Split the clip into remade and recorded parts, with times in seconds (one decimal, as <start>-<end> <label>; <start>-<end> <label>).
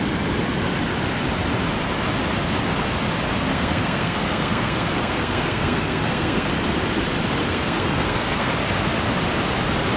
0.0-3.5 recorded; 3.5-6.5 remade; 6.5-7.4 recorded; 7.4-8.5 remade; 8.5-10.0 recorded